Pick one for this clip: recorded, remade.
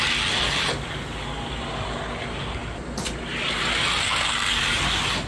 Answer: recorded